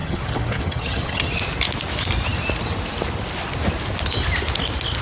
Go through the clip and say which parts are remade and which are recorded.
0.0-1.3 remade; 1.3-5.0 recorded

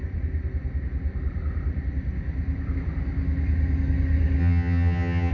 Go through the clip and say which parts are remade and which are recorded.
0.0-4.4 recorded; 4.4-5.3 remade

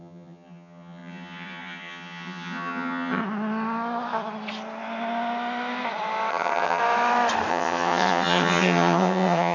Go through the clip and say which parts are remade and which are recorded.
0.0-3.2 remade; 3.2-6.3 recorded; 6.3-6.8 remade; 6.8-7.5 recorded; 7.5-9.5 remade

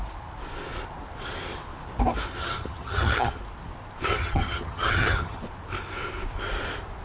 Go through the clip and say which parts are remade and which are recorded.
0.0-2.4 recorded; 2.4-3.4 remade; 3.4-4.1 recorded; 4.1-5.4 remade; 5.4-7.0 recorded

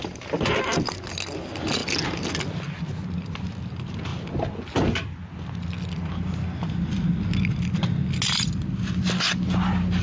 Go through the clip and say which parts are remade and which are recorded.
0.0-10.0 recorded

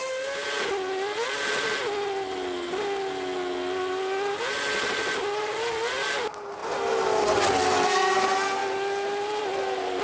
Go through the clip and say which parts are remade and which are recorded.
0.0-10.0 recorded